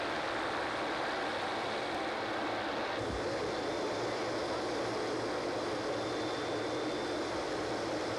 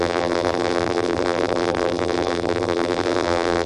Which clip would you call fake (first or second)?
second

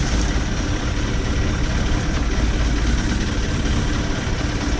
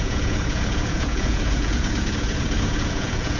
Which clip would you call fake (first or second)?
second